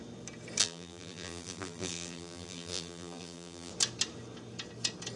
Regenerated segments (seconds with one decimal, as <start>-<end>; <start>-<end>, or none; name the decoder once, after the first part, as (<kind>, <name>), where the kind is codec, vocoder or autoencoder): 0.6-3.7 (vocoder, BigVGAN v2)